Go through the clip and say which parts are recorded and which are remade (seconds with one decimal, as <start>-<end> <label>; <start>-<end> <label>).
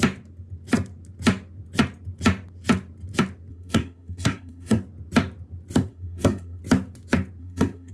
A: 0.0-3.5 recorded; 3.5-4.8 remade; 4.8-5.9 recorded; 5.9-6.6 remade; 6.6-7.4 recorded; 7.4-7.9 remade